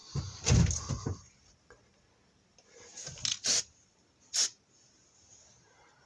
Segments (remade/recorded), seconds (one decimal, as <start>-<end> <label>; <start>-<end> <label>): 0.0-6.1 recorded